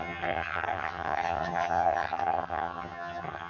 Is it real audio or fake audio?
fake